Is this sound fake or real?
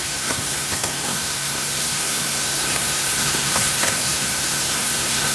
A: fake